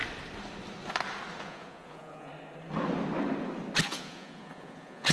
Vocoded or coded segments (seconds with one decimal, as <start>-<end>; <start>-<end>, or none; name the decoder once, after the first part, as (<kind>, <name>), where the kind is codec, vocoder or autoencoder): 1.4-2.3 (vocoder, Vocos); 3.8-5.1